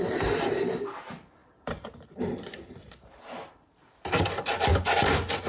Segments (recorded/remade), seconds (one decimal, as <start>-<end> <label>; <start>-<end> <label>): 0.0-4.7 remade; 4.7-5.5 recorded